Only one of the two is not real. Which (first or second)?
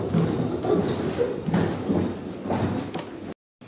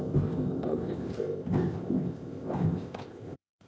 second